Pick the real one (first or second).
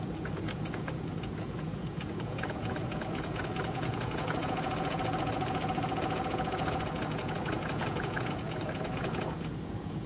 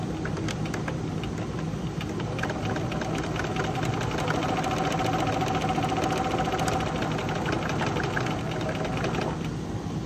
second